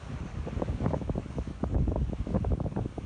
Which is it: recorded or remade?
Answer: remade